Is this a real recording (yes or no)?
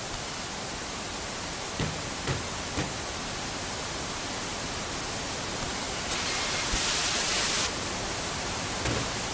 yes